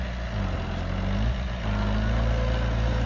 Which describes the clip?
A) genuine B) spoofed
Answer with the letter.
A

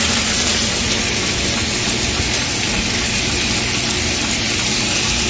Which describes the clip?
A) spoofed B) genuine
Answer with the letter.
B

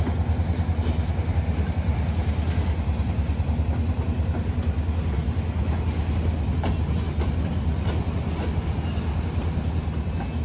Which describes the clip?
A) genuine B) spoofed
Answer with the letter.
A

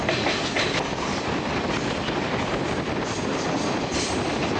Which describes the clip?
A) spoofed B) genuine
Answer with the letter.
B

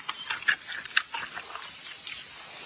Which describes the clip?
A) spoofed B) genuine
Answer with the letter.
B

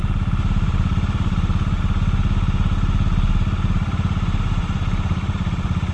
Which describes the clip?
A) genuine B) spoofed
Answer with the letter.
A